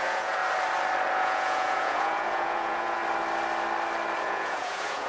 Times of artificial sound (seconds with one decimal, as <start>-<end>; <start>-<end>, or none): 0.0-0.4; 1.1-3.0; 4.2-5.1